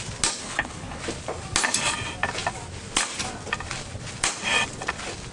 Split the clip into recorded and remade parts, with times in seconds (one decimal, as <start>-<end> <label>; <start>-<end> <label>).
0.0-0.4 recorded; 0.4-1.0 remade; 1.0-5.3 recorded

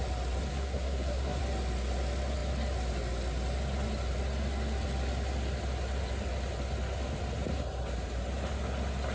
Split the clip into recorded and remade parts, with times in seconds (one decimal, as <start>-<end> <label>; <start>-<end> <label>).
0.0-0.5 recorded; 0.5-1.4 remade; 1.4-9.1 recorded

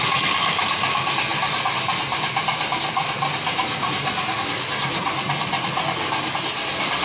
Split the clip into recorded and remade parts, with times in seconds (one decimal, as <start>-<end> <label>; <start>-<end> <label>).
0.0-7.0 recorded

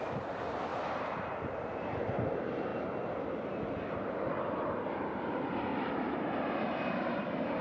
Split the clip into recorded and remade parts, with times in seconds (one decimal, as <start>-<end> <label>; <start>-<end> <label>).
0.0-2.7 remade; 2.7-3.9 recorded; 3.9-5.7 remade; 5.7-6.7 recorded; 6.7-7.6 remade